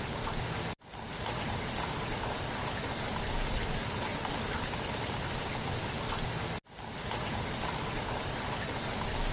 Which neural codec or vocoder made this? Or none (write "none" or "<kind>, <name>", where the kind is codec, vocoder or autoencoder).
none